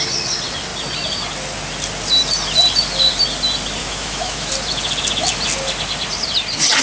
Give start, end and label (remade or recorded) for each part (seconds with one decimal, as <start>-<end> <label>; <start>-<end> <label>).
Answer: 0.0-3.8 recorded; 3.8-4.5 remade; 4.5-6.8 recorded